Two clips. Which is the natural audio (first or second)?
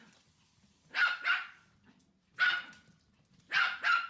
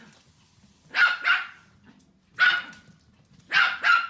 second